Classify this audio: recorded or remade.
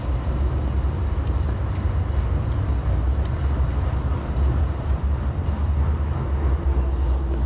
recorded